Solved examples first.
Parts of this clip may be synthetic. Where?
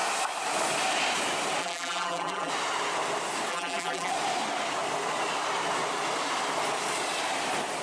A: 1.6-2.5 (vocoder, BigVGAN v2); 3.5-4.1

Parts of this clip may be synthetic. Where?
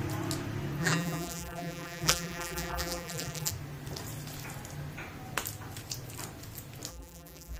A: 0.8-3.5 (vocoder, BigVGAN v2); 6.9-7.6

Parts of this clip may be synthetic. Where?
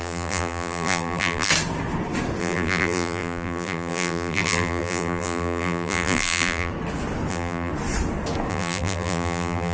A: 0.0-1.5 (vocoder, BigVGAN v2); 2.4-6.7; 7.3-7.7; 8.5-9.7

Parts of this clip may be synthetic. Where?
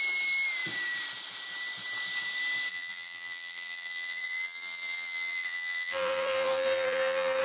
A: 2.7-7.4 (vocoder, BigVGAN v2)